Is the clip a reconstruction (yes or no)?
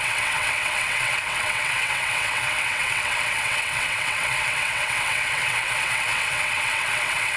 yes